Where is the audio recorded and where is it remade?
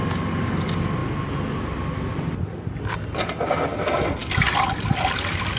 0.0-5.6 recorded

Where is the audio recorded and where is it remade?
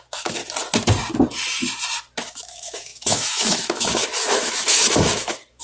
0.0-0.4 remade; 0.4-2.3 recorded; 2.3-5.6 remade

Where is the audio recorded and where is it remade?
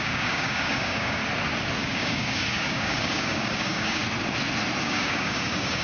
0.0-1.2 remade; 1.2-1.8 recorded; 1.8-4.0 remade; 4.0-4.8 recorded; 4.8-5.8 remade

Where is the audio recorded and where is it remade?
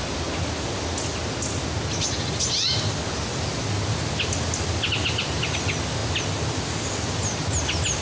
0.0-8.0 recorded